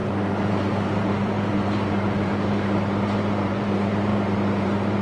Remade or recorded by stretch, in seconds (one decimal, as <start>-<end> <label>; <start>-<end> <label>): 0.0-5.0 remade